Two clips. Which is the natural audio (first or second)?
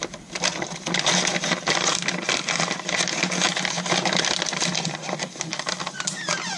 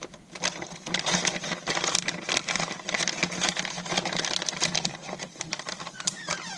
first